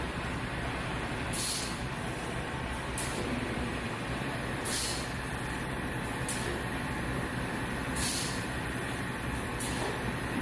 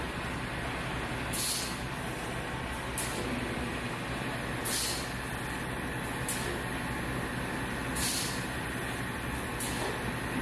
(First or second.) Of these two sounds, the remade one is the first